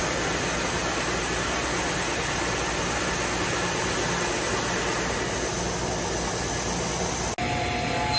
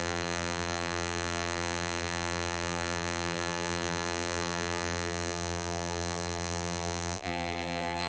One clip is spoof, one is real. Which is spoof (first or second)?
second